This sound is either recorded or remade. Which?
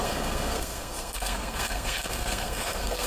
remade